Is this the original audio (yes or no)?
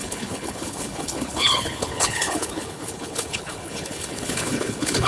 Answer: no